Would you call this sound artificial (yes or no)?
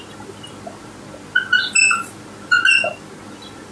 no